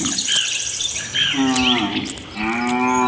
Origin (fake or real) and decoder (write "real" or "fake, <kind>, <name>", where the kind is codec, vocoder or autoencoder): real